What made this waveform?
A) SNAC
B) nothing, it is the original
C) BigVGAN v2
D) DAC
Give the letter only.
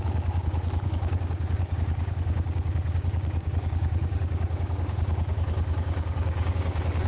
D